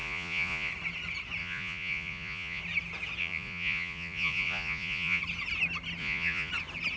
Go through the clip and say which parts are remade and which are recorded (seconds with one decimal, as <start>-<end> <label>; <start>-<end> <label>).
0.0-0.7 remade; 0.7-1.4 recorded; 1.4-2.6 remade; 2.6-3.2 recorded; 3.2-5.2 remade; 5.2-6.0 recorded; 6.0-6.5 remade; 6.5-7.0 recorded